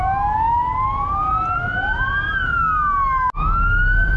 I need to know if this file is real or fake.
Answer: real